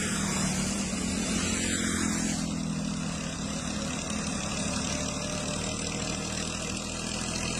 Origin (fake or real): real